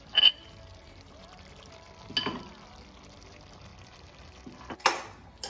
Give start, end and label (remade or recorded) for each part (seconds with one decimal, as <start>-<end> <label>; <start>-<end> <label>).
0.0-5.5 recorded